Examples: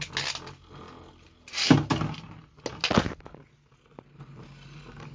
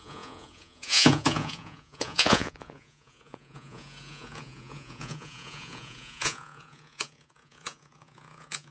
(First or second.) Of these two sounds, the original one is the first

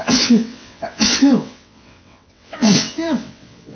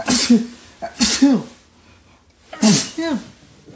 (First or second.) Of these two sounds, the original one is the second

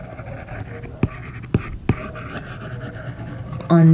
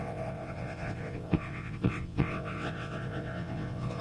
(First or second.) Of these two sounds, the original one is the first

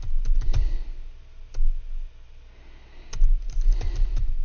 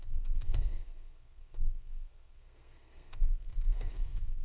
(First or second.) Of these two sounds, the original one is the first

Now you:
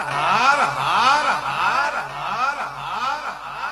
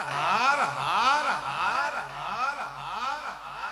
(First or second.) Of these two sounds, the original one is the first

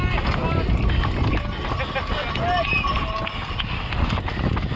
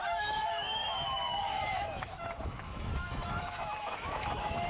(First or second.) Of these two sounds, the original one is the first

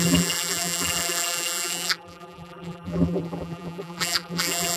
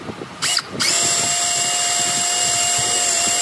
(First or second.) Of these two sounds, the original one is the second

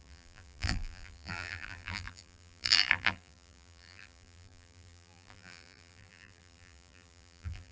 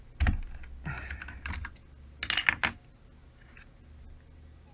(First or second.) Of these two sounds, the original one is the second